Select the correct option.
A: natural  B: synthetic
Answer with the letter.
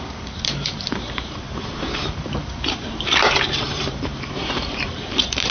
B